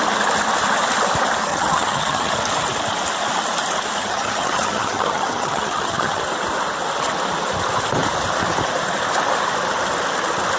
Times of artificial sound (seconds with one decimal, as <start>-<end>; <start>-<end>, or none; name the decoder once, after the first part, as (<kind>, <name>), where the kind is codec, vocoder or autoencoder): 1.5-2.3 (vocoder, HiFi-GAN); 4.0-6.2